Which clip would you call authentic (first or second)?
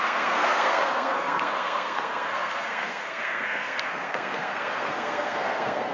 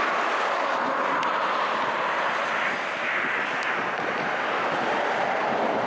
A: second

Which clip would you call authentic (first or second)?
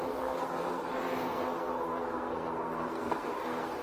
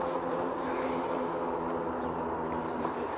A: second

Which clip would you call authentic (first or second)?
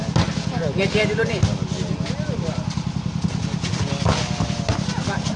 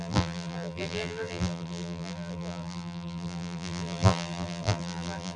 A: first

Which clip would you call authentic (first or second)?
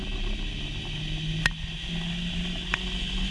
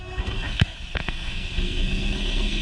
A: first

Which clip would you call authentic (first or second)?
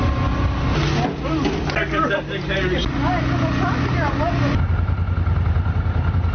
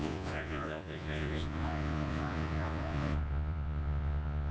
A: first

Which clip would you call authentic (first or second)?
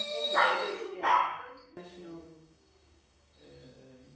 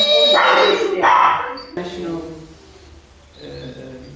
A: second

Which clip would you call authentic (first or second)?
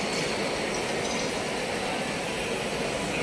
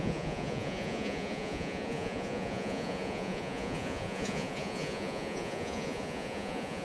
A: first